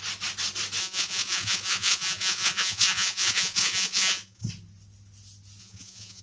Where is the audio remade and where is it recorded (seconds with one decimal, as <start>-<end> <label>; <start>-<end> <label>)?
0.0-0.8 recorded; 0.8-4.5 remade; 4.5-5.6 recorded; 5.6-6.2 remade

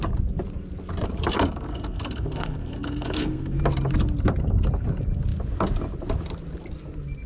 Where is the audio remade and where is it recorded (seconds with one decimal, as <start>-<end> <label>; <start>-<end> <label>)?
0.0-1.7 recorded; 1.7-3.6 remade; 3.6-7.3 recorded

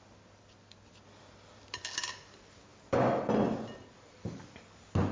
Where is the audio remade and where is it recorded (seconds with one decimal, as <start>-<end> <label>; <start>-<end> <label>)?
0.0-5.1 recorded